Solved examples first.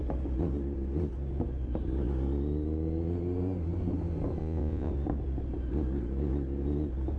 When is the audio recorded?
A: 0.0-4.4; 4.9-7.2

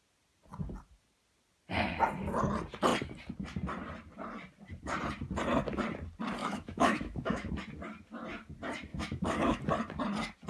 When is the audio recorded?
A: 0.0-6.4; 7.5-8.9; 9.6-10.5

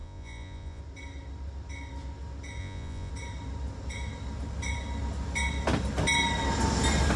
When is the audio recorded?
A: 0.8-2.6; 3.1-7.2

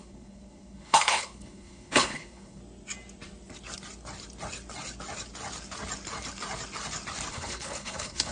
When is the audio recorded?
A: 2.6-7.3

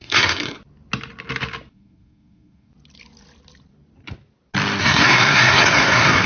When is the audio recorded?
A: 0.6-1.7; 2.7-4.8

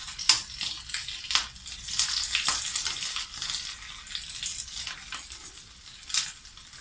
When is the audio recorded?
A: 0.0-6.8

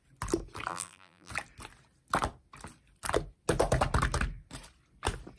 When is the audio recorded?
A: 0.0-0.7; 1.3-5.4